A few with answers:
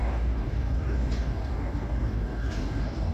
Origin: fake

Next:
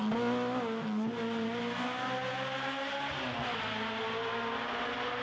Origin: real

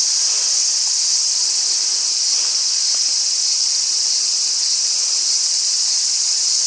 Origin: real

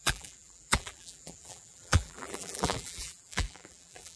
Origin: fake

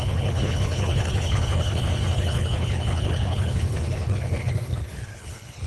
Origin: fake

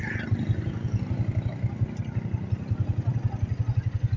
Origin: real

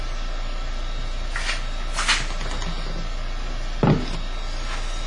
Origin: real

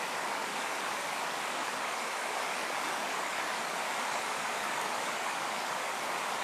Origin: fake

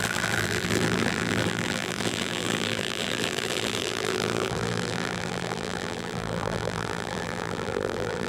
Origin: fake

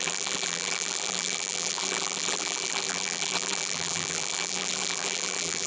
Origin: fake